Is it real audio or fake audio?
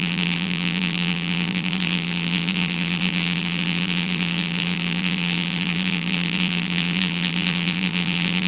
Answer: fake